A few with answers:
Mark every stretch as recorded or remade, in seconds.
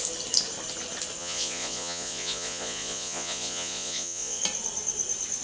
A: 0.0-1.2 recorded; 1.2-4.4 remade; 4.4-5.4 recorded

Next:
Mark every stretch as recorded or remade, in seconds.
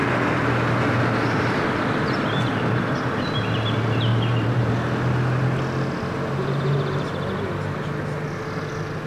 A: 0.0-4.1 recorded; 4.1-4.7 remade; 4.7-9.1 recorded